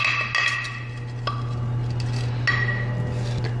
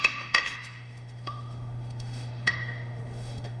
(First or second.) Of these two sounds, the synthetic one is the second